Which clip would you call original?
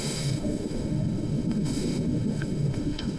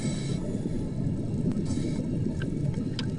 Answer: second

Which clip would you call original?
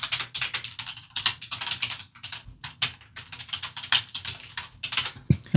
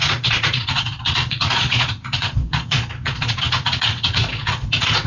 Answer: first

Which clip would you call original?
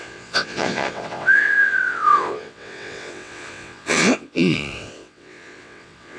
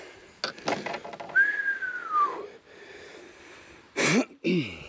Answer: second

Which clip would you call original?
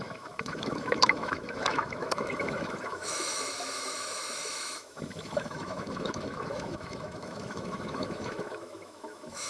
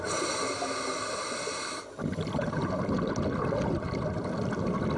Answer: second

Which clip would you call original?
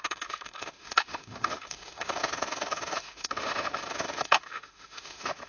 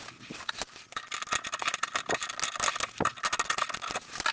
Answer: second